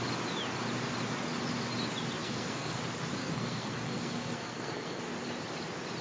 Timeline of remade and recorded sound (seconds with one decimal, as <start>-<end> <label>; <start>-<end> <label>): 0.0-2.2 recorded; 2.2-2.8 remade; 2.8-3.2 recorded; 3.2-5.0 remade; 5.0-6.0 recorded